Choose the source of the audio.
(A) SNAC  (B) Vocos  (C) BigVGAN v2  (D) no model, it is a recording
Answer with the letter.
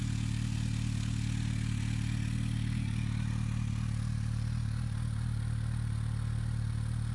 D